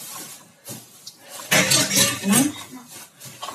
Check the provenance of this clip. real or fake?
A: real